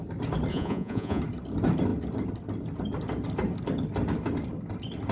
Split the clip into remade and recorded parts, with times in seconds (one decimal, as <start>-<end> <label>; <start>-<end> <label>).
0.0-0.5 recorded; 0.5-1.2 remade; 1.2-5.1 recorded